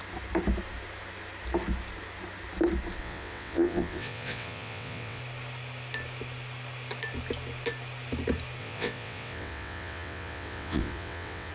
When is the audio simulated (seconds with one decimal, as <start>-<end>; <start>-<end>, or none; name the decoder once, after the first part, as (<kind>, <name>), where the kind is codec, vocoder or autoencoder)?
3.0-5.2 (vocoder, WaveNeXt); 8.6-11.5